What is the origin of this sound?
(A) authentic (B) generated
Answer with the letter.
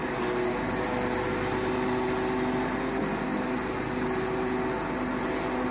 A